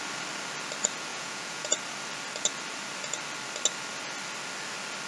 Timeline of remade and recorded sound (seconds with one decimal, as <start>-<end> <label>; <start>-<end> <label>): 0.0-1.1 recorded; 1.1-1.7 remade; 1.7-5.1 recorded